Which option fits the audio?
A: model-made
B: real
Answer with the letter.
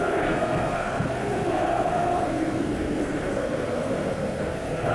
A